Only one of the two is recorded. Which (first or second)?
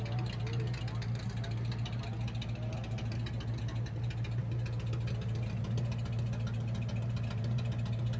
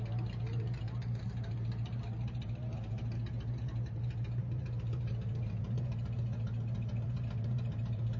first